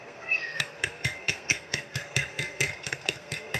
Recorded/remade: remade